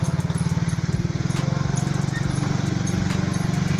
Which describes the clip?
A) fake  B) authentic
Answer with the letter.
B